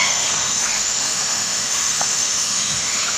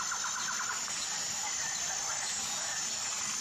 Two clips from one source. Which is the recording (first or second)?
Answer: second